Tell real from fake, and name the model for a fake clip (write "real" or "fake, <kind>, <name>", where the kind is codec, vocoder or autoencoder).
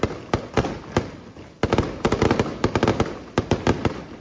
real